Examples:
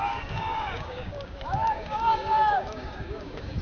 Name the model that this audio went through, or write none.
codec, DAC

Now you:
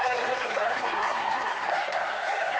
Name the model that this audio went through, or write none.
codec, SNAC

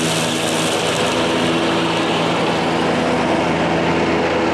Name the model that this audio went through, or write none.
none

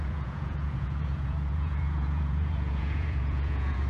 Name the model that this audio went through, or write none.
vocoder, Vocos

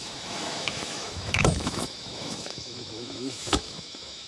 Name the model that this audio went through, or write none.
autoencoder, DAC-VAE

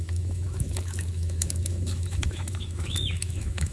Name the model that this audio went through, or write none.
autoencoder, DAC-VAE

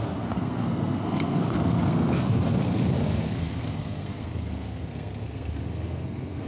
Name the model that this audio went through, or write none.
codec, SNAC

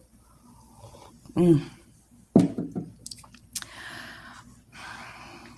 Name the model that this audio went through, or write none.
none